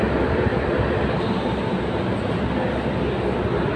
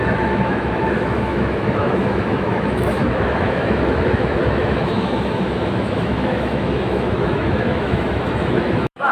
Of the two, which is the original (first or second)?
first